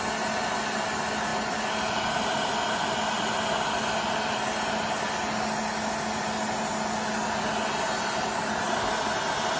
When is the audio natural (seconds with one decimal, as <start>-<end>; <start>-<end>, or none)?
0.0-9.6

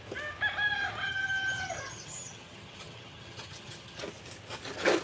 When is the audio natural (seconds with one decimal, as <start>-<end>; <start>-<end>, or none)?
0.0-1.0; 4.0-5.0

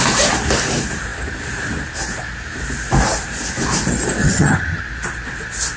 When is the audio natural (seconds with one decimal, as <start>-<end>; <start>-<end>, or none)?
0.0-4.2; 4.8-5.8

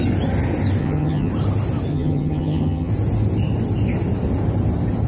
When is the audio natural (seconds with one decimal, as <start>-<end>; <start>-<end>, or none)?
0.0-0.8; 1.3-1.9; 2.9-5.1

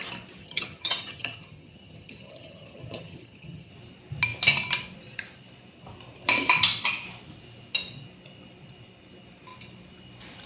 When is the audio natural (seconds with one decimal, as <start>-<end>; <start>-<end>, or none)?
0.0-0.4; 3.7-10.5

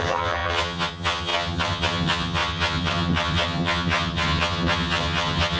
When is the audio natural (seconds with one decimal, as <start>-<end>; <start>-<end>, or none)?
none